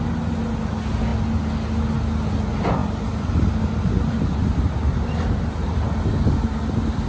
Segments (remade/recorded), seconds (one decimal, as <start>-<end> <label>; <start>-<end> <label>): 0.0-2.8 recorded; 2.8-6.0 remade; 6.0-7.1 recorded